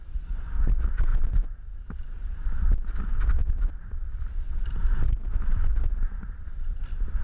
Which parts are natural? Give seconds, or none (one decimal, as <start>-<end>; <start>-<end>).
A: none